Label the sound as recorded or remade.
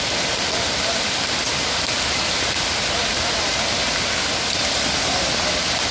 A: recorded